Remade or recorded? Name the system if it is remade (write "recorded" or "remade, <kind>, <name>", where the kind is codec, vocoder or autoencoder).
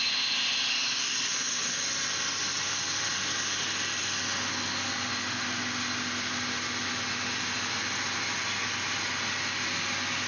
recorded